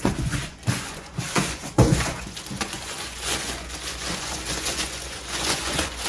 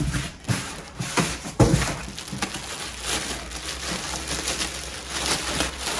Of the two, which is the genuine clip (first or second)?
second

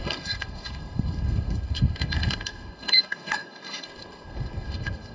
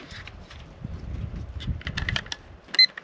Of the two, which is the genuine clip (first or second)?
second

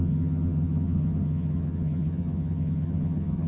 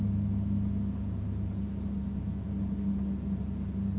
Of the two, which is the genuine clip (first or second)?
second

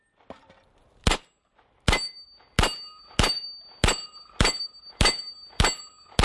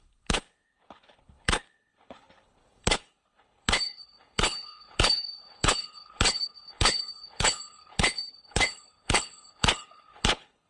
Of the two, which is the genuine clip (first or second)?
first